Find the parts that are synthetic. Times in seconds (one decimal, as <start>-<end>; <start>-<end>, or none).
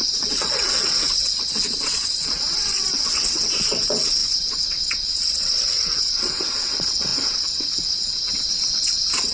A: 0.0-9.3